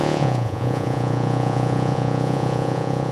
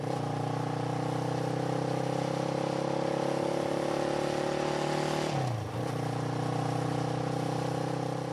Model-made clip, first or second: first